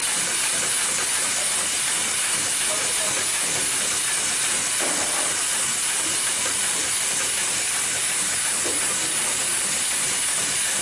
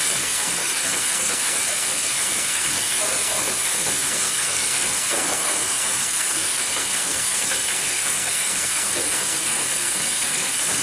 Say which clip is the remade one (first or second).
second